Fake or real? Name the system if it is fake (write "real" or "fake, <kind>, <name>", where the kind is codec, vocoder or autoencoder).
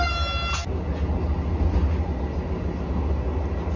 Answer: real